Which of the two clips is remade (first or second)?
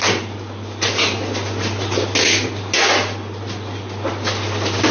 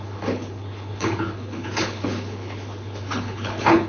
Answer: second